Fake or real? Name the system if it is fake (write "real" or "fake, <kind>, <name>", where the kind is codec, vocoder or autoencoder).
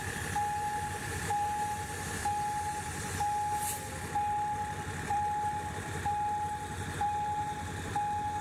real